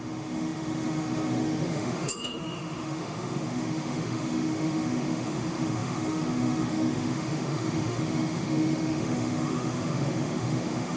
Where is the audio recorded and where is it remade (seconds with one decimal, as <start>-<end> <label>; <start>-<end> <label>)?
0.0-11.0 remade